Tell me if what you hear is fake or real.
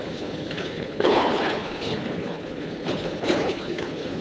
fake